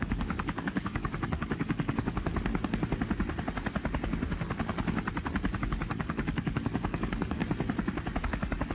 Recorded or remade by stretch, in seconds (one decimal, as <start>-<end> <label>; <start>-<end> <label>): 0.0-2.3 remade; 2.3-5.6 recorded; 5.6-7.4 remade; 7.4-8.2 recorded; 8.2-8.7 remade